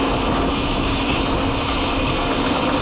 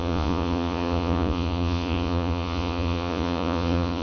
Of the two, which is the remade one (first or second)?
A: second